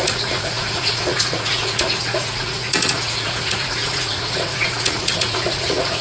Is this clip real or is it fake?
fake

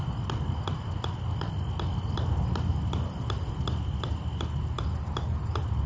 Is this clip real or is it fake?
real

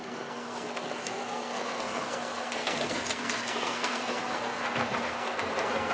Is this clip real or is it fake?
fake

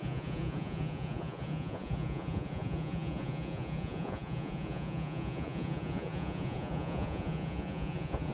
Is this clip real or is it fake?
fake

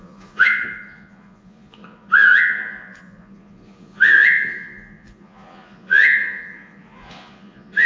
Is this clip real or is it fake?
fake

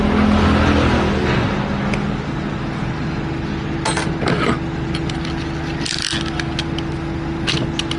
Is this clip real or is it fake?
real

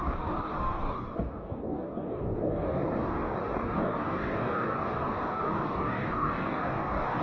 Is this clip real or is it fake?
fake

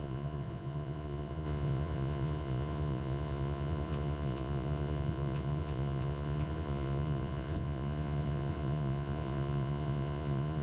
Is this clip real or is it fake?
fake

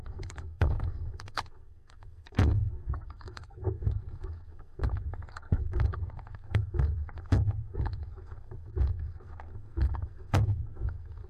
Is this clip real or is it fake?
fake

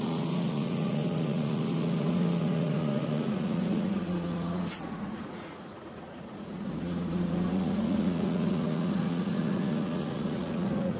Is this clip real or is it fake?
fake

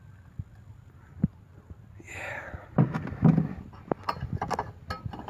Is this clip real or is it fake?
real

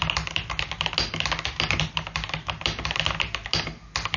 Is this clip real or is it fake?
real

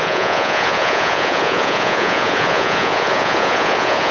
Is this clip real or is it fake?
fake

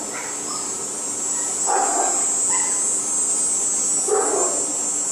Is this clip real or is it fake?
real